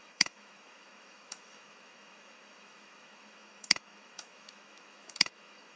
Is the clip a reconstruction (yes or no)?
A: yes